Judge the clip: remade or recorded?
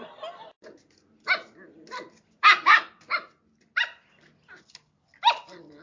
recorded